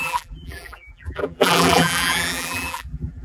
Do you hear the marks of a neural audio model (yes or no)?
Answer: yes